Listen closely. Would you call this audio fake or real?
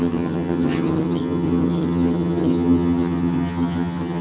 fake